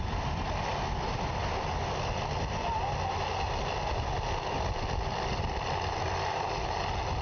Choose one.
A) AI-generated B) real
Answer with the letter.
B